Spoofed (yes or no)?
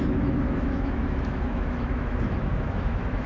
yes